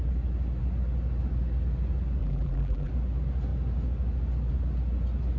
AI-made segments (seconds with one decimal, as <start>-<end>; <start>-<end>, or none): 2.2-2.9